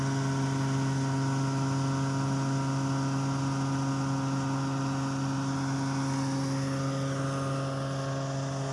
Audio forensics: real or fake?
real